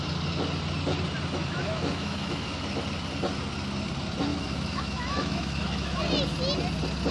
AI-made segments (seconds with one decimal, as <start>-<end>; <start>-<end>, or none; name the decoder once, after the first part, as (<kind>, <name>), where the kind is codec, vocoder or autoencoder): 1.4-2.6 (autoencoder, DAC-VAE); 4.3-6.0